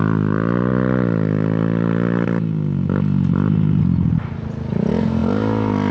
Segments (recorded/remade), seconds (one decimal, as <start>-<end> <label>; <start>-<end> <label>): 0.0-5.9 recorded